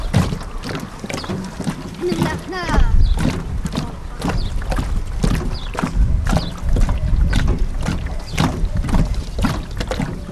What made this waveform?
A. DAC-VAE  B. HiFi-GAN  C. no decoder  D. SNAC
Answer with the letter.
C